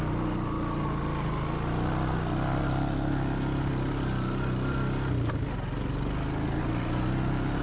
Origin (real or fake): real